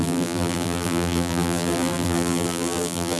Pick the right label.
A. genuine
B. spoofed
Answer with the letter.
B